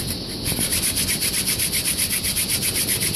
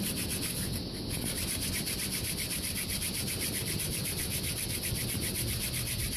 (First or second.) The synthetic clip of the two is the second